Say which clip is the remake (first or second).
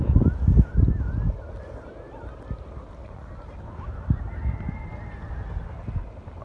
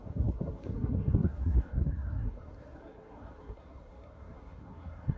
second